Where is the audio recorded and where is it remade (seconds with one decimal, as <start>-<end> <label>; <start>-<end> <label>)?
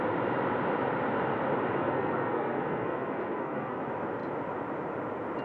0.0-1.8 recorded; 1.8-3.8 remade; 3.8-5.4 recorded